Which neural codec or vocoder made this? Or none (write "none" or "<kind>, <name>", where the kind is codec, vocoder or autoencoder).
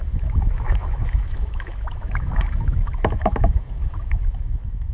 autoencoder, DAC-VAE